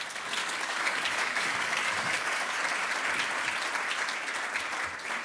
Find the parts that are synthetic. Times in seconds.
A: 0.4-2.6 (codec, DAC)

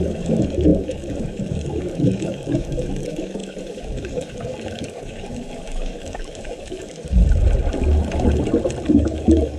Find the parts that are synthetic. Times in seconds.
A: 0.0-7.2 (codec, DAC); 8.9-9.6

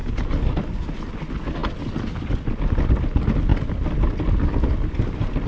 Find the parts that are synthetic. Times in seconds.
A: none